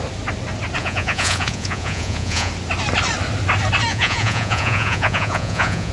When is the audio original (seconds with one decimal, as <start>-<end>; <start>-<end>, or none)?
0.0-0.8; 2.5-3.9